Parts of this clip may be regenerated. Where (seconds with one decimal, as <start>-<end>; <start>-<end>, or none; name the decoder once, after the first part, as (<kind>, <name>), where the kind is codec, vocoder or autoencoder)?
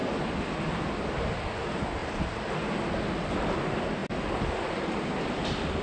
0.0-0.8 (vocoder, BigVGAN v2); 2.0-2.7; 4.0-5.1